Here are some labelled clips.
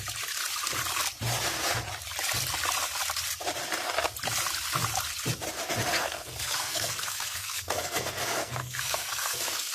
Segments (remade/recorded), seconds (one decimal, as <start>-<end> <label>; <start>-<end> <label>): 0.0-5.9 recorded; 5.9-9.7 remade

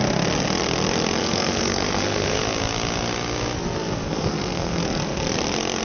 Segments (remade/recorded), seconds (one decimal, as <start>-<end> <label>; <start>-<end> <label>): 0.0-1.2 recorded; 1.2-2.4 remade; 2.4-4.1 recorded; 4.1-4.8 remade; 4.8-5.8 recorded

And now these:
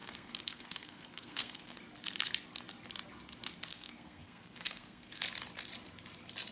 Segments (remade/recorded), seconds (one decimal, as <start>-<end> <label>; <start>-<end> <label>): 0.0-1.8 remade; 1.8-3.7 recorded; 3.7-5.2 remade; 5.2-6.5 recorded

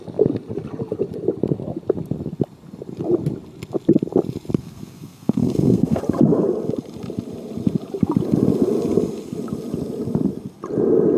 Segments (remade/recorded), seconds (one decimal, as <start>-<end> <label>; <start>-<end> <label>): 0.0-4.6 recorded; 4.6-6.0 remade; 6.0-11.2 recorded

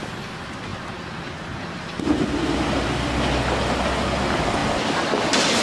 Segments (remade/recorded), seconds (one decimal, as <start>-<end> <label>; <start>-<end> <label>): 0.0-5.6 recorded

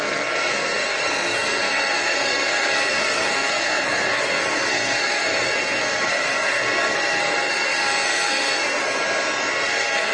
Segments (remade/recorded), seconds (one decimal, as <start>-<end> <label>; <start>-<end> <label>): 0.0-8.8 remade; 8.8-9.5 recorded; 9.5-10.1 remade